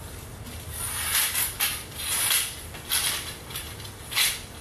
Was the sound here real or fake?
real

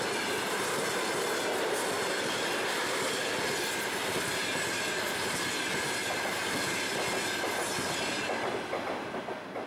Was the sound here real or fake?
real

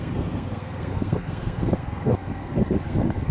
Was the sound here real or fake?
fake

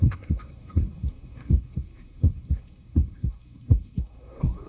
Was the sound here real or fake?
fake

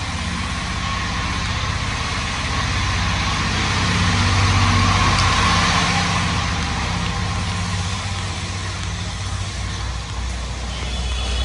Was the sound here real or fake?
real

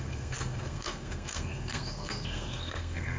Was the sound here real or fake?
fake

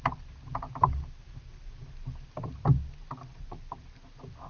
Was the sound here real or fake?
real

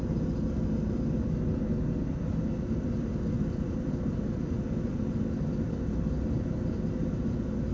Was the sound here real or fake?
real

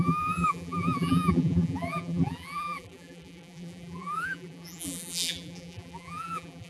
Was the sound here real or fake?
fake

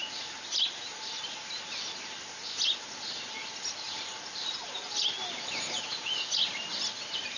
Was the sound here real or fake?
real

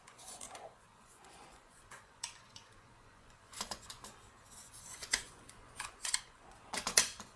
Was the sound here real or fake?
fake